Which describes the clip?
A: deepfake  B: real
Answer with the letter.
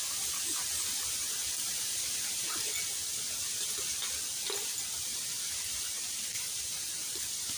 B